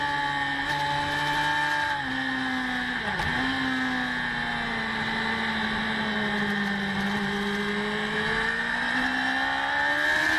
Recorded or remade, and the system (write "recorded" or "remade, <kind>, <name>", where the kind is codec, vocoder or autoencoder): recorded